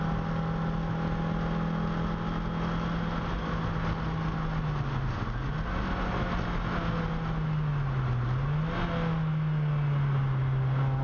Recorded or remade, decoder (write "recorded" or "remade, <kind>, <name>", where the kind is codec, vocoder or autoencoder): recorded